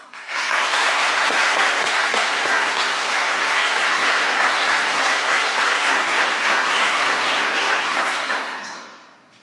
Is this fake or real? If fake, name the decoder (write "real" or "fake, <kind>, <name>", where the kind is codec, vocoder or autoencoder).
fake, codec, SNAC